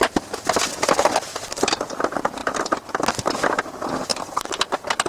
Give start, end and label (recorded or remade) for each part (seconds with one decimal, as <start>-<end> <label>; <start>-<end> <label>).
0.0-5.1 recorded